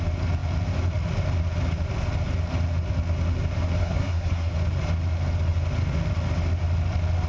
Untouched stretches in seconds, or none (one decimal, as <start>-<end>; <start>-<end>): 0.0-3.8; 4.5-7.3